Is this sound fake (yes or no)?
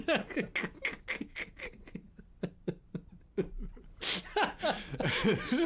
no